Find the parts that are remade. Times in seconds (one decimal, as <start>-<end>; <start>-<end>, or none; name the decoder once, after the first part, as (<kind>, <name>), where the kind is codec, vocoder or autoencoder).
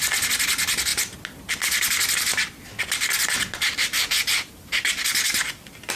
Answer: none